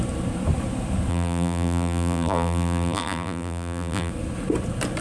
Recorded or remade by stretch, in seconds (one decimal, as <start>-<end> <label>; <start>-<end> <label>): 0.0-1.1 recorded; 1.1-4.1 remade; 4.1-5.0 recorded